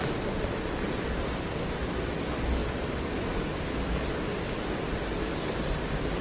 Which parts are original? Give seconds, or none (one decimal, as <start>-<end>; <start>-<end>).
0.0-6.2